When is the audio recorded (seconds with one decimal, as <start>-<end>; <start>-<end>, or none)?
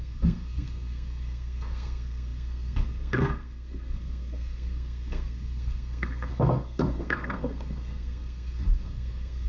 none